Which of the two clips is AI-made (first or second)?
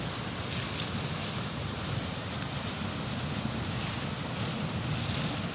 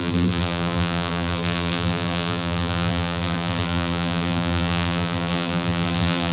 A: second